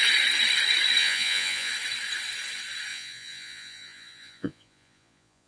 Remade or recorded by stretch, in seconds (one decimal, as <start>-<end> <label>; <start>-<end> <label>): 0.0-1.0 recorded; 1.0-1.7 remade; 1.7-2.9 recorded; 2.9-5.5 remade